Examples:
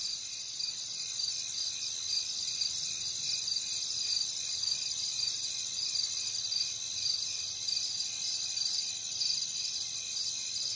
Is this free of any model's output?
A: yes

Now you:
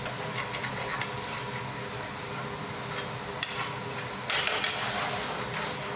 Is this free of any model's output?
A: yes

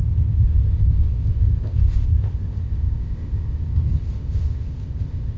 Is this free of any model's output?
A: no